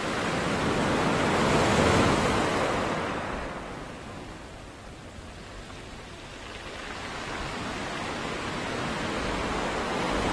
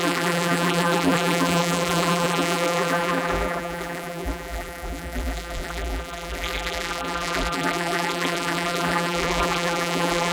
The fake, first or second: second